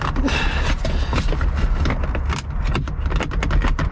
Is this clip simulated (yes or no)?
no